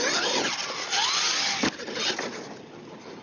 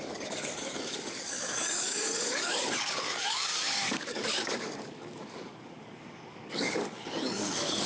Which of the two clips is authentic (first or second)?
first